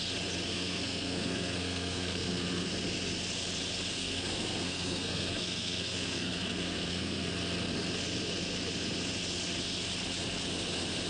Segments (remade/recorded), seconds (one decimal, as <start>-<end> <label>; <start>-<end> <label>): 0.0-0.5 recorded; 0.5-2.7 remade; 2.7-4.0 recorded; 4.0-7.3 remade; 7.3-11.1 recorded